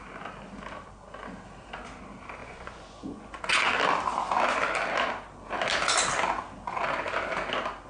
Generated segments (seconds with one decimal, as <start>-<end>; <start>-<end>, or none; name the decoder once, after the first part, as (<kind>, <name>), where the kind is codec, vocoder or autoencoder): 2.4-3.4 (vocoder, Vocos)